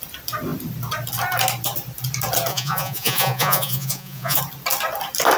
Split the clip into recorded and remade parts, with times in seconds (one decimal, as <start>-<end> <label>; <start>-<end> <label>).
0.0-2.5 recorded; 2.5-4.4 remade; 4.4-5.4 recorded